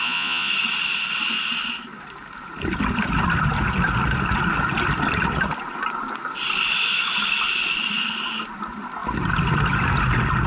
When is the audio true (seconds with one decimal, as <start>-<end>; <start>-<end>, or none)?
0.5-10.5